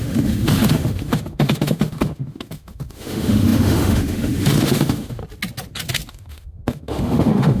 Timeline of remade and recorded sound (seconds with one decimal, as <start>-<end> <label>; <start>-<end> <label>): 0.0-5.2 remade; 5.2-6.1 recorded; 6.1-7.6 remade